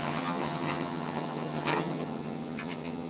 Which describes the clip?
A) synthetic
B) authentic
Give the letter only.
A